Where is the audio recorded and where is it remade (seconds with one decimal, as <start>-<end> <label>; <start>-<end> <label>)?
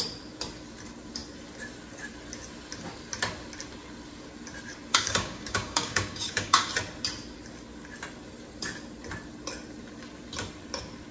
0.0-4.9 recorded; 4.9-6.7 remade; 6.7-11.1 recorded